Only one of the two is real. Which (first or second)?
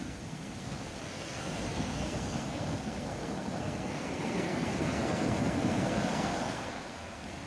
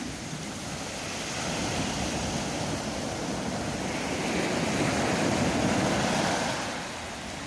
second